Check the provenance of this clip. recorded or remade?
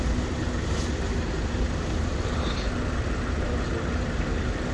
recorded